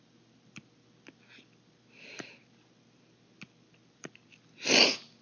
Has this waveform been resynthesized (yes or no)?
no